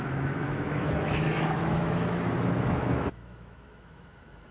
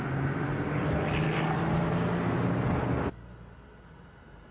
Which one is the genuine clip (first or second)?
second